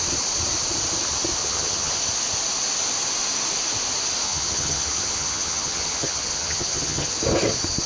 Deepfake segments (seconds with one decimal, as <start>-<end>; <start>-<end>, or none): 1.4-2.0; 4.2-7.2